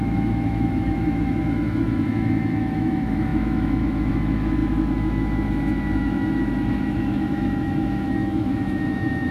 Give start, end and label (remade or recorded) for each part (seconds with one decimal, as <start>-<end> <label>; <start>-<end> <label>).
0.0-9.3 remade